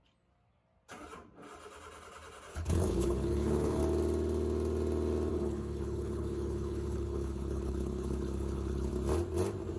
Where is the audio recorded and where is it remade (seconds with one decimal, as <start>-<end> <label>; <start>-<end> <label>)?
0.0-2.5 recorded; 2.5-3.8 remade; 3.8-5.3 recorded; 5.3-8.9 remade; 8.9-9.8 recorded